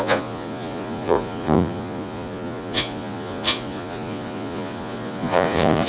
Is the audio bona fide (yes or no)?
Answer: no